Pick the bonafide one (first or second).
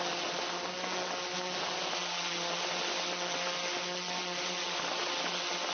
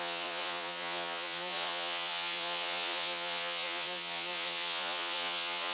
first